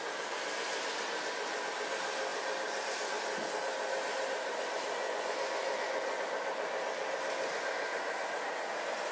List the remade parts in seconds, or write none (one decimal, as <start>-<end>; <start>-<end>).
5.0-6.2